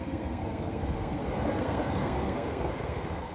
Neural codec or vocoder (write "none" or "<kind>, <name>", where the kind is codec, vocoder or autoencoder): codec, SNAC